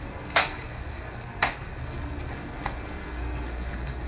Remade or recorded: remade